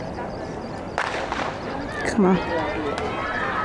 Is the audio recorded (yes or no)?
yes